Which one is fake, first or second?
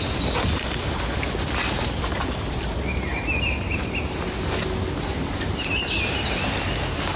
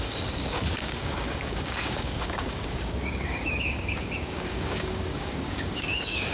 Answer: second